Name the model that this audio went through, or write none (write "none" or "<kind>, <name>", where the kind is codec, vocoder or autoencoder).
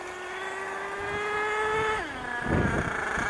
none